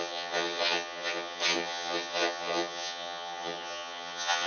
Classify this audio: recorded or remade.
remade